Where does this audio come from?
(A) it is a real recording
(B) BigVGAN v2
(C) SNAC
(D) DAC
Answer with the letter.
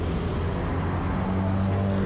A